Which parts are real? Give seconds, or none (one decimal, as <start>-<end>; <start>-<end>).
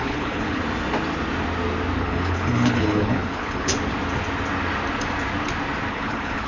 0.6-2.0; 3.7-5.9